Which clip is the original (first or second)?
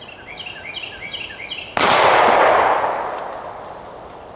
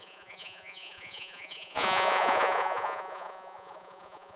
first